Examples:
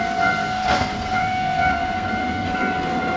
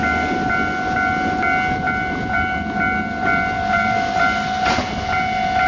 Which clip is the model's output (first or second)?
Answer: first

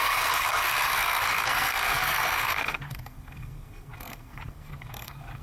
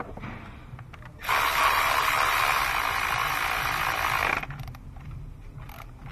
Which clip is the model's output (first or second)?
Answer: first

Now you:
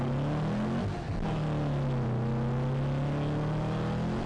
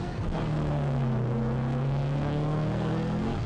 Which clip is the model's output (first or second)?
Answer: second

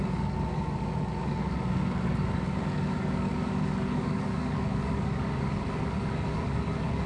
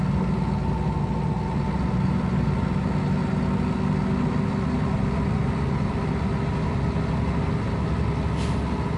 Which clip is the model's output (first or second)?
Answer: first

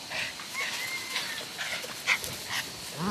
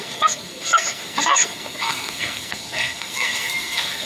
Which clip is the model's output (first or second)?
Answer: second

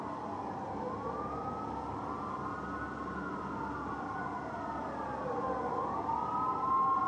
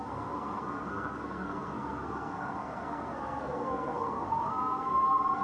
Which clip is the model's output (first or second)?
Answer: second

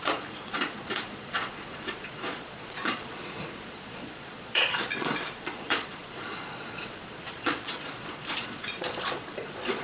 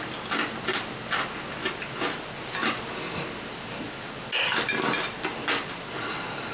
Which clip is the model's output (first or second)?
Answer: first